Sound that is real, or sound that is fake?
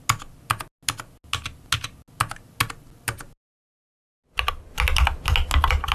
real